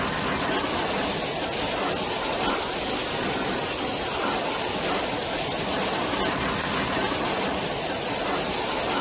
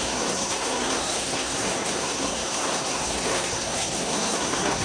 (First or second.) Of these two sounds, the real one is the first